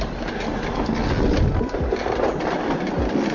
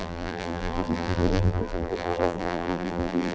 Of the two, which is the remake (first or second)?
second